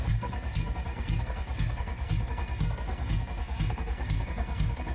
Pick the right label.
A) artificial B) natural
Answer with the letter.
A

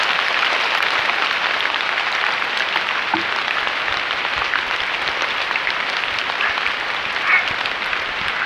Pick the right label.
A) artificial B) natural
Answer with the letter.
A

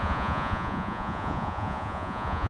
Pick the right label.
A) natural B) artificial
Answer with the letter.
B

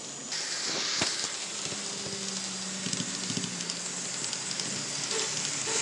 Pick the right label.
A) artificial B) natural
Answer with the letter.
B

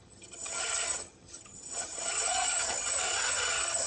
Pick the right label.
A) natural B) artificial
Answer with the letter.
B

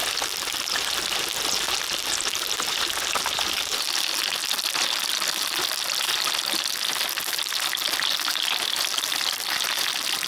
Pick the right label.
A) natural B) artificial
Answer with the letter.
A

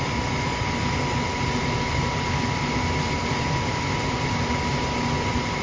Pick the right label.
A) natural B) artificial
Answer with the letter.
A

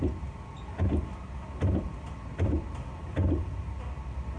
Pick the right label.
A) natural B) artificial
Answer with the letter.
A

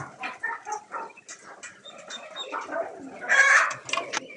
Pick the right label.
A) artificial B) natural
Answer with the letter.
B